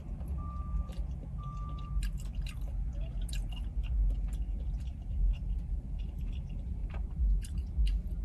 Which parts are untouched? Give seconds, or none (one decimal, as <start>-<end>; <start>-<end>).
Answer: 0.0-4.9; 6.3-6.8; 7.7-8.2